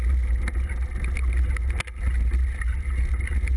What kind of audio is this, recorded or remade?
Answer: recorded